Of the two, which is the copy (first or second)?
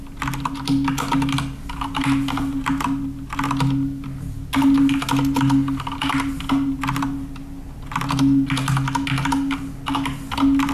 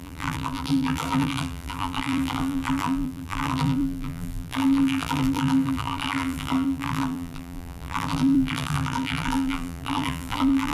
second